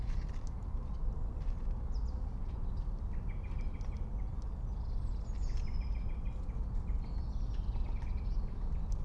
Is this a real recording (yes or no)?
yes